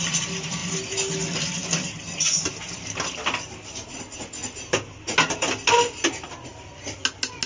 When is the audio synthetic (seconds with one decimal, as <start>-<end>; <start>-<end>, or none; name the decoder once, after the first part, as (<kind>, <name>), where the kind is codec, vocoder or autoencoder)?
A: 0.6-1.1 (vocoder, BigVGAN v2)